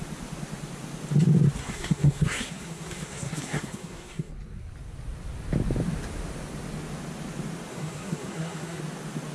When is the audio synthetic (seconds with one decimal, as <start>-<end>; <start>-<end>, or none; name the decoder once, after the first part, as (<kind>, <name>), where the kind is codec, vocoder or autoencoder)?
1.6-4.3 (codec, SNAC); 7.7-8.8